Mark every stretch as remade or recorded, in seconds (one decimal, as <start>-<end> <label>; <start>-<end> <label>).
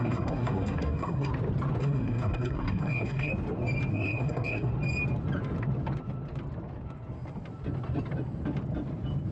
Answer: 0.0-1.3 remade; 1.3-1.8 recorded; 1.8-3.3 remade; 3.3-3.9 recorded; 3.9-4.7 remade; 4.7-9.3 recorded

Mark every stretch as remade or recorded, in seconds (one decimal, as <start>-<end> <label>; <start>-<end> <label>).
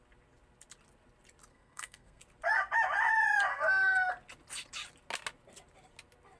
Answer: 0.0-1.5 recorded; 1.5-2.2 remade; 2.2-3.5 recorded; 3.5-4.1 remade; 4.1-6.4 recorded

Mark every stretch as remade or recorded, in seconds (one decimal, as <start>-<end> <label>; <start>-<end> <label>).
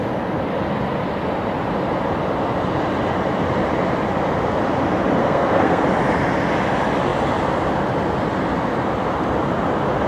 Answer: 0.0-5.2 recorded; 5.2-5.8 remade; 5.8-10.1 recorded